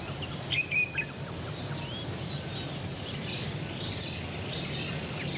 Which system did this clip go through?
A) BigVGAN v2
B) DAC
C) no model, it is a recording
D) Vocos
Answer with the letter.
C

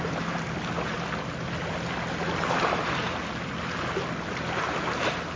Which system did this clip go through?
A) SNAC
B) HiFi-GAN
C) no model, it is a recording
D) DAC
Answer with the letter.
C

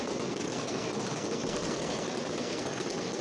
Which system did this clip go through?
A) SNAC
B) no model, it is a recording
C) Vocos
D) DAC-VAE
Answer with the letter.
A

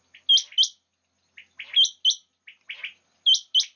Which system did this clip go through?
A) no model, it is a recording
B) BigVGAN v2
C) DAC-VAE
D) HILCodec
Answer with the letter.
A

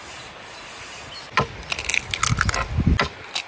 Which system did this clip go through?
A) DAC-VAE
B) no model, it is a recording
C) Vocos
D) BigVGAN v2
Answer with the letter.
B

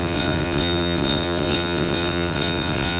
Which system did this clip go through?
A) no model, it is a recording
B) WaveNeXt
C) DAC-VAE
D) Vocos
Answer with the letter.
B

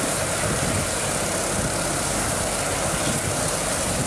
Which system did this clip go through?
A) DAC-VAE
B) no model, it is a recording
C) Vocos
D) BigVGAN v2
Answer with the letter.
B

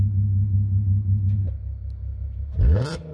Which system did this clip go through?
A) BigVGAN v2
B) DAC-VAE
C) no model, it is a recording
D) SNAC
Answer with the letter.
C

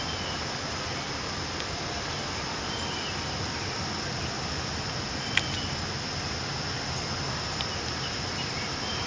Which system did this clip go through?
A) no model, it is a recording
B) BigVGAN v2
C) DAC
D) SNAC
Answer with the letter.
A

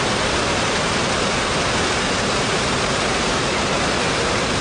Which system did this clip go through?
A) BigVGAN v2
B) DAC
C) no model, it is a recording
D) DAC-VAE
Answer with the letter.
A